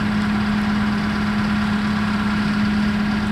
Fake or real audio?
real